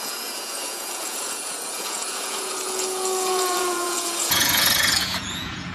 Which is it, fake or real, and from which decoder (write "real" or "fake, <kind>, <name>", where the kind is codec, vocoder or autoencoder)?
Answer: fake, vocoder, Vocos